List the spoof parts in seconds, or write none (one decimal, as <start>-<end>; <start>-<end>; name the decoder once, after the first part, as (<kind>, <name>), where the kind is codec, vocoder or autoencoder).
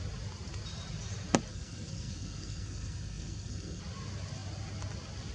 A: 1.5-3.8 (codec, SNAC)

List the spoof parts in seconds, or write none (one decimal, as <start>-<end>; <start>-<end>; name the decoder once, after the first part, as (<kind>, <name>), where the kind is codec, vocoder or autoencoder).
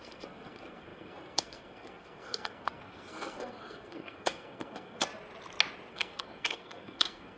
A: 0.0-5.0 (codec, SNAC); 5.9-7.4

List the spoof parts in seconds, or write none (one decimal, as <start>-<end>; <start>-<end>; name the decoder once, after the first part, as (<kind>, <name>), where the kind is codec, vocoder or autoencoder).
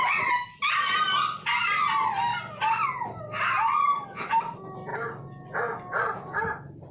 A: none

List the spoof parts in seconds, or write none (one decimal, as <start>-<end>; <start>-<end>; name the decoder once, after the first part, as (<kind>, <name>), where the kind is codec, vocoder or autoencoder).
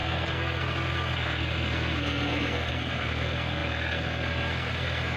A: 0.0-5.2 (codec, SNAC)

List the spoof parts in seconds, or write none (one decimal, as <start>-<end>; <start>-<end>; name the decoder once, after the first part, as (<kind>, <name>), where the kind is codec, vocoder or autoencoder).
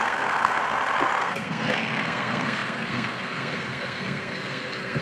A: 0.0-0.6 (codec, SNAC); 1.2-5.0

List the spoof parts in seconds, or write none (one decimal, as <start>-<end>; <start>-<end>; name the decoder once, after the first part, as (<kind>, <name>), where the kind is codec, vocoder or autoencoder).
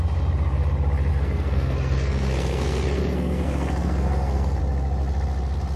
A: 1.1-4.6 (codec, SNAC)